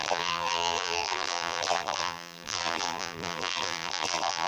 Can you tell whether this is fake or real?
fake